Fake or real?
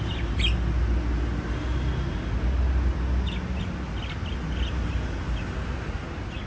real